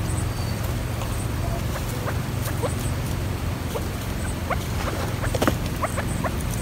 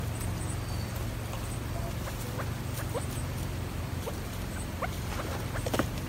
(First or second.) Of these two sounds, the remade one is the first